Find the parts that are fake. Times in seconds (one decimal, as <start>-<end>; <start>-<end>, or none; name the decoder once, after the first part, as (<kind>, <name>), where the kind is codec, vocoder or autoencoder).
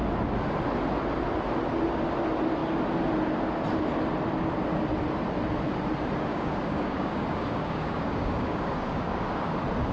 6.3-9.5 (codec, DAC)